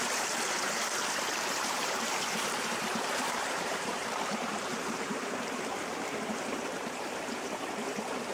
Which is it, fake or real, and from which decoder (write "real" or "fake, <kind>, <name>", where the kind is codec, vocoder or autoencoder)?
fake, vocoder, BigVGAN v2